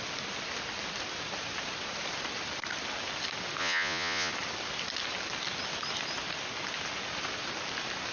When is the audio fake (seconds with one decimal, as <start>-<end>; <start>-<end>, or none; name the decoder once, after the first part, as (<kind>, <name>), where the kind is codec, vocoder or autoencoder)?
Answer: 3.6-4.3 (vocoder, Vocos)